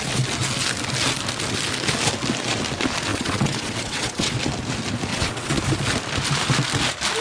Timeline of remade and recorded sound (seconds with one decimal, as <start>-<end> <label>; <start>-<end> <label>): 0.0-3.1 recorded; 3.1-4.3 remade; 4.3-5.1 recorded; 5.1-5.6 remade; 5.6-7.2 recorded